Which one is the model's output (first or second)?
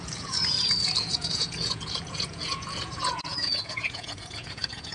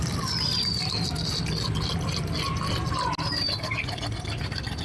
first